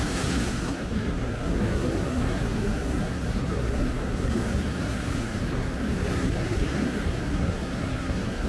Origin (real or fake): fake